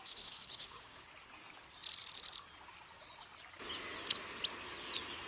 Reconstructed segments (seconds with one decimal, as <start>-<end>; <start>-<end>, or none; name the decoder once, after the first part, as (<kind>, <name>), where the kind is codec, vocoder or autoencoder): 0.0-1.1 (codec, DAC)